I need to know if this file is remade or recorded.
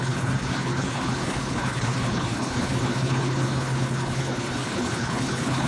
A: remade